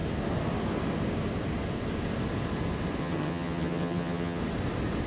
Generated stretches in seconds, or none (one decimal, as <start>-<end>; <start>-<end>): 3.0-4.4